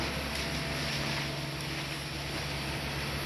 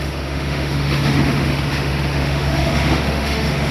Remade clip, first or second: second